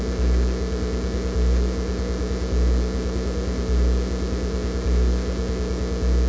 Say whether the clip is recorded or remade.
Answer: recorded